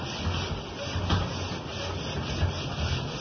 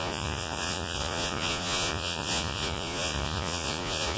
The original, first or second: first